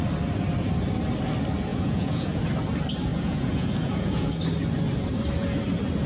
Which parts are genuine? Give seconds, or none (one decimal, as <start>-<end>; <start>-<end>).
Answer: 0.0-1.7; 2.4-3.1; 4.4-6.1